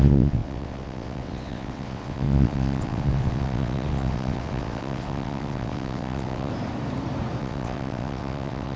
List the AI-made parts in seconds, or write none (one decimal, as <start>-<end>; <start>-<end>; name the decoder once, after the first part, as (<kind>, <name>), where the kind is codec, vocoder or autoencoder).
0.0-6.5 (vocoder, WaveNeXt); 7.4-8.8